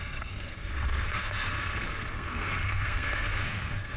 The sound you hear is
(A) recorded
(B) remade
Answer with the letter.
B